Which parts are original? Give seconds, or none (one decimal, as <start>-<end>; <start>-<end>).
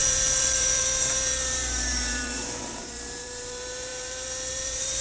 none